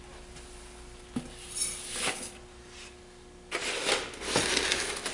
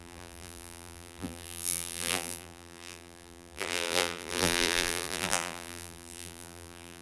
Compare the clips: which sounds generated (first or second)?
second